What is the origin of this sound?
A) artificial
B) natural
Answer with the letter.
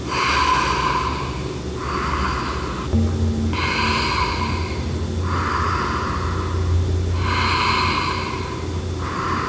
B